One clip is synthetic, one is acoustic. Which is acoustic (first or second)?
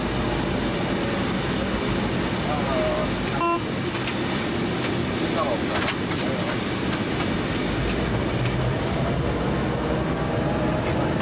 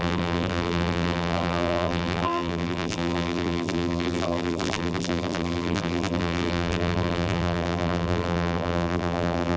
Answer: first